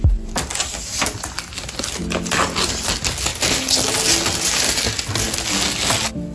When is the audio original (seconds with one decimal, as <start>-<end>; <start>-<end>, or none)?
0.0-6.3